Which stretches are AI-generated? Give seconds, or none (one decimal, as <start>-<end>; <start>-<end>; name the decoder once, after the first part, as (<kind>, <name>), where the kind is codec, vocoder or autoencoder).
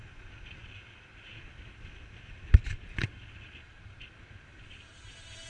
none